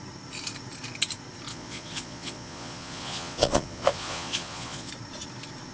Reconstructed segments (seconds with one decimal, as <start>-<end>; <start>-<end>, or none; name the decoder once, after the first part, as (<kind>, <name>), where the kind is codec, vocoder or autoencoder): 1.5-4.9 (vocoder, Vocos)